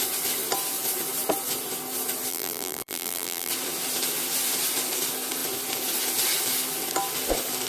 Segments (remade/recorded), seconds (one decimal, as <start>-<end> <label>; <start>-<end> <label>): 0.0-2.3 recorded; 2.3-3.5 remade; 3.5-7.7 recorded